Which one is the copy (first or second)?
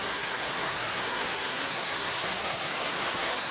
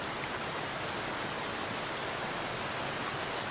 first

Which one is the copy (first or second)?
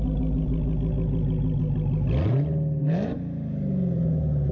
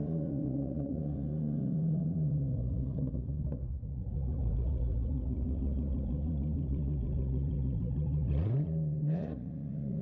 second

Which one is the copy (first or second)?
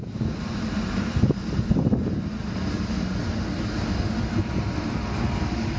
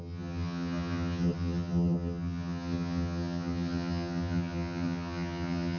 second